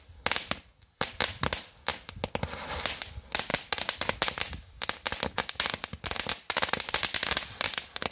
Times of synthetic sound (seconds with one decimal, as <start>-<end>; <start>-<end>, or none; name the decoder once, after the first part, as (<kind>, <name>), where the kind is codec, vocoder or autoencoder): none